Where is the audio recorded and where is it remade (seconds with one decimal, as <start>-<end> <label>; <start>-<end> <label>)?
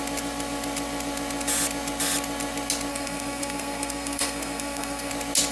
0.0-2.9 recorded; 2.9-5.1 remade; 5.1-5.5 recorded